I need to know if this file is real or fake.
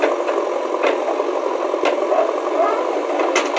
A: real